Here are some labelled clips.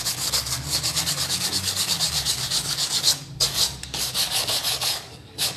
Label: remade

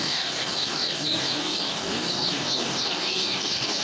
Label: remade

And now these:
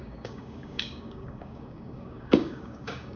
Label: remade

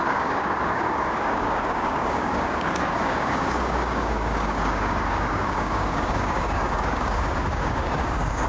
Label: remade